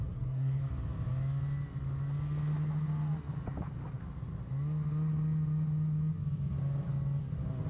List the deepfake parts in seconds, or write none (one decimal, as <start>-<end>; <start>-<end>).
0.0-0.6